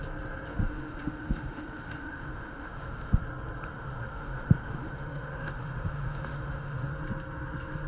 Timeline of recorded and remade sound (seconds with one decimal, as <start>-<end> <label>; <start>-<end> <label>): 0.0-0.5 recorded; 0.5-3.2 remade; 3.2-3.7 recorded; 3.7-6.9 remade; 6.9-7.9 recorded